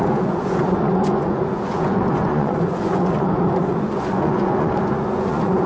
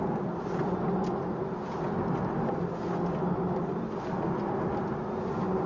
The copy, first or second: first